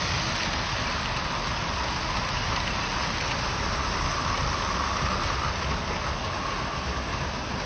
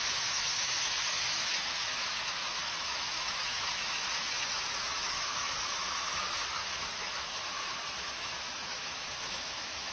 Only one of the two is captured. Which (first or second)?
first